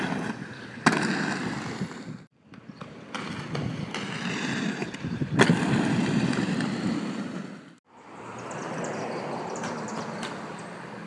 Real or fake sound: fake